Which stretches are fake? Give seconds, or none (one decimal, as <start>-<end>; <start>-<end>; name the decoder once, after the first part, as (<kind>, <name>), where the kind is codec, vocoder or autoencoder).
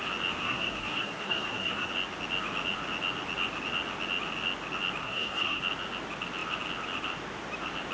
0.4-1.9 (codec, SNAC); 5.0-5.6